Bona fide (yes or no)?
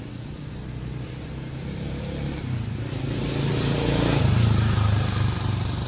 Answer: yes